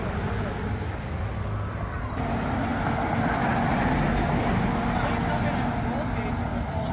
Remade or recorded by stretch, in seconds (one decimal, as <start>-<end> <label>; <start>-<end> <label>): 0.0-6.9 recorded